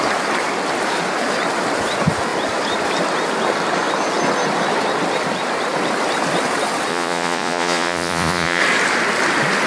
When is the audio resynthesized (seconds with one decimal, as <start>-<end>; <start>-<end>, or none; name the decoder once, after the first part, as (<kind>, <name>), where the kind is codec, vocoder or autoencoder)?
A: 6.9-8.6 (vocoder, Vocos)